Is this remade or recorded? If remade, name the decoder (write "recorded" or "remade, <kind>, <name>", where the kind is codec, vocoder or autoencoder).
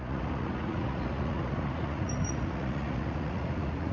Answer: remade, vocoder, Vocos